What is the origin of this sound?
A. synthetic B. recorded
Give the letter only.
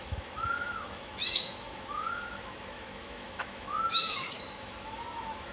A